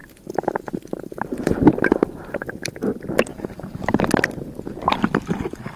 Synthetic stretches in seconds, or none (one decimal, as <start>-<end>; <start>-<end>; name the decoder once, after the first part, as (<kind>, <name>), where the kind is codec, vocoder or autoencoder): 3.3-4.2 (vocoder, BigVGAN v2)